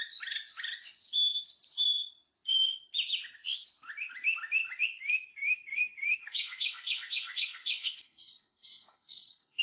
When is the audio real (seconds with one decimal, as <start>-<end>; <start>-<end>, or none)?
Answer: 0.0-5.3